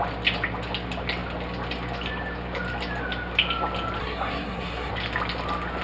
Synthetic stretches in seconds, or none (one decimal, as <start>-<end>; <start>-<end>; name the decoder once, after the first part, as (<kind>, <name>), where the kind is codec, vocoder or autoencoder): 4.0-4.9 (codec, SNAC)